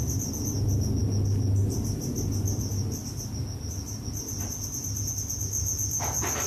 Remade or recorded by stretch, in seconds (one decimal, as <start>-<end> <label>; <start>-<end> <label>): 0.0-6.5 recorded